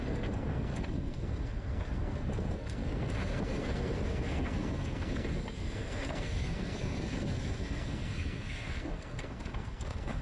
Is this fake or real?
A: fake